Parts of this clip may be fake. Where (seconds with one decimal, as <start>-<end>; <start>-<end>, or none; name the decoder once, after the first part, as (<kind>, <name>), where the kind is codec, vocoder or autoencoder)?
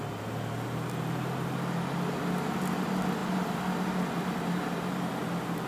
none